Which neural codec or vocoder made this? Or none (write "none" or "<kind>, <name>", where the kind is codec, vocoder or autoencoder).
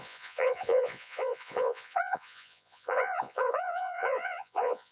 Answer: vocoder, Vocos